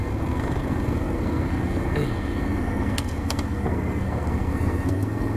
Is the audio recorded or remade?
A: remade